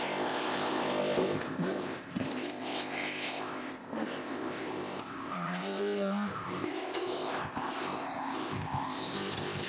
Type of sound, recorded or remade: remade